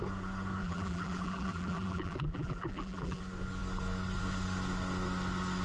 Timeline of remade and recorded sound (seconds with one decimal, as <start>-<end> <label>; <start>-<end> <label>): 0.0-0.6 recorded; 0.6-3.2 remade; 3.2-5.6 recorded